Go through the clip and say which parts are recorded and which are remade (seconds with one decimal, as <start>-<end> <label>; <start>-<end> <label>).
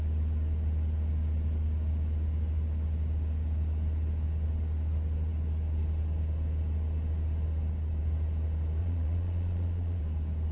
0.0-8.8 recorded; 8.8-10.0 remade; 10.0-10.5 recorded